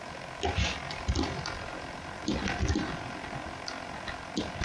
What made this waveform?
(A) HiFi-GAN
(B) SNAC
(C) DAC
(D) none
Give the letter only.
D